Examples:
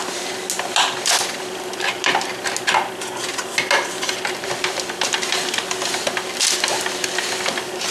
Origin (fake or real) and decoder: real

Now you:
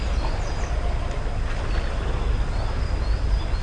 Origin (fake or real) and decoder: real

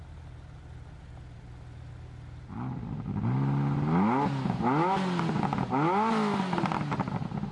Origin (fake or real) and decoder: real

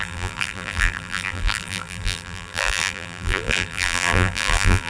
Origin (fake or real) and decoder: fake, vocoder, BigVGAN v2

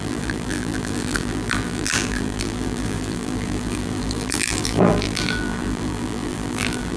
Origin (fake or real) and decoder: fake, vocoder, BigVGAN v2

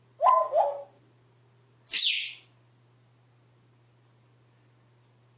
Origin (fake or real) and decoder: real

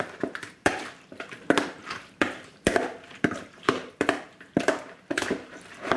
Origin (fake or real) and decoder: fake, vocoder, BigVGAN v2